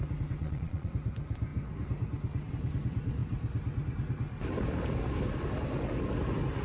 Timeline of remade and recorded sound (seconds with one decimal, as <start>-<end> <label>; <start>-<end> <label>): 0.0-0.4 recorded; 0.4-0.9 remade; 0.9-6.6 recorded